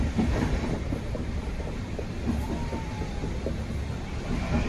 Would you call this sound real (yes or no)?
no